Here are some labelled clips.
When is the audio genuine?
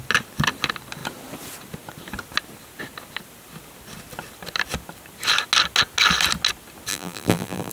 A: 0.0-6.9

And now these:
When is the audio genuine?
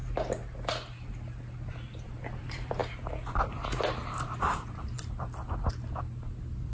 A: 0.0-2.4; 2.8-6.7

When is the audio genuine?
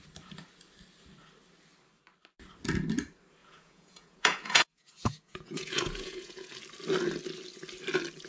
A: 0.0-3.4; 6.5-8.3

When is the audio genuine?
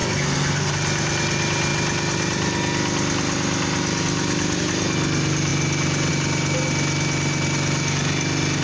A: 0.7-8.6